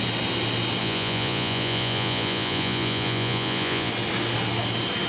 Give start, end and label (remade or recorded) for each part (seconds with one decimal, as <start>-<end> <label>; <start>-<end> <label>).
0.0-0.8 recorded; 0.8-3.9 remade; 3.9-5.1 recorded